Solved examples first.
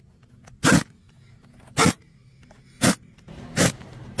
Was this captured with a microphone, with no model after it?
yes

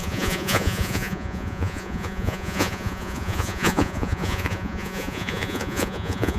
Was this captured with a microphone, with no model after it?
no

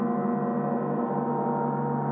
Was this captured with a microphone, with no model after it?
yes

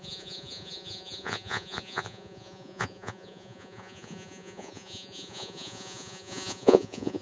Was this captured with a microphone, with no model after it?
no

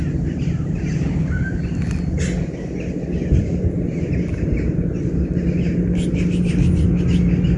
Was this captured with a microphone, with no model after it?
yes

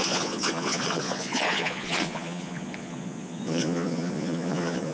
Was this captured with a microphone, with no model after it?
no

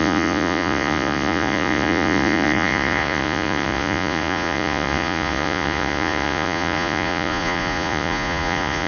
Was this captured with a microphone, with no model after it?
no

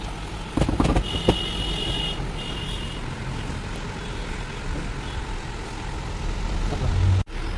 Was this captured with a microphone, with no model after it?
yes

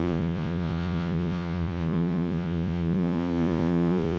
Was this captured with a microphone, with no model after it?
no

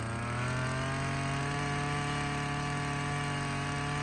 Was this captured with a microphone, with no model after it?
yes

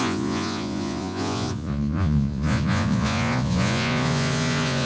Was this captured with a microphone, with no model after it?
no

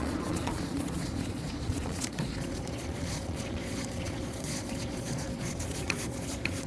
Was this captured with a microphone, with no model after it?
no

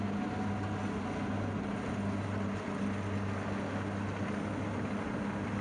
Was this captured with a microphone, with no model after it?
yes